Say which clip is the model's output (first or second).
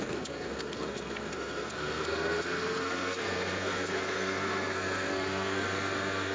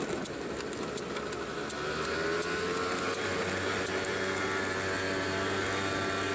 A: first